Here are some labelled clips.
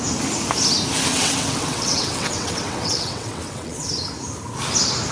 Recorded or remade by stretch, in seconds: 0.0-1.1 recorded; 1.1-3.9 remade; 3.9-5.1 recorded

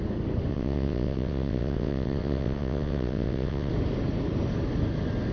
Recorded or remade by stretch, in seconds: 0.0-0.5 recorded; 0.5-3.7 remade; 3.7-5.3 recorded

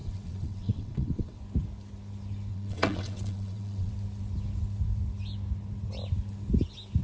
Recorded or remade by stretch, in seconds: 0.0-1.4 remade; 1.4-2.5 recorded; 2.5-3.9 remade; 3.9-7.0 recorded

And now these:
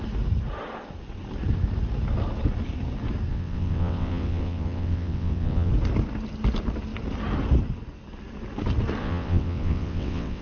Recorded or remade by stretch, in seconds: 0.0-3.3 recorded; 3.3-5.7 remade; 5.7-9.0 recorded; 9.0-10.4 remade

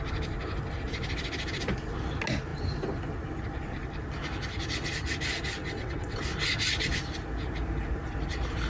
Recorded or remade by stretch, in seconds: 0.0-5.6 recorded; 5.6-6.2 remade; 6.2-8.7 recorded